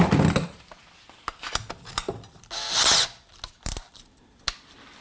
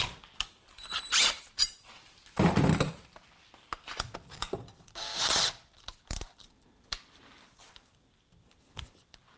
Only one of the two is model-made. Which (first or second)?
second